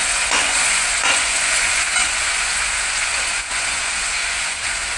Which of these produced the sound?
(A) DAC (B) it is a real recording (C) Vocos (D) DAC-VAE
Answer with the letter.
C